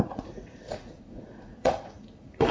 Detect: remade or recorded remade